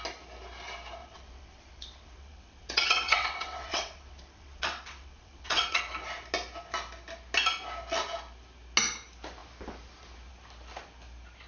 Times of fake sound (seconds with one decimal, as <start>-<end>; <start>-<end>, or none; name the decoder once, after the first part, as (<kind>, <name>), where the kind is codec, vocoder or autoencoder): 1.0-5.8 (vocoder, WaveNeXt)